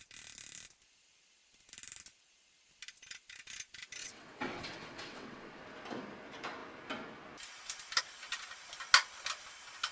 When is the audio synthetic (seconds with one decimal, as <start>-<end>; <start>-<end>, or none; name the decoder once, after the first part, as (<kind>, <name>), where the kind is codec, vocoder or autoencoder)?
4.0-5.6 (vocoder, WaveNeXt)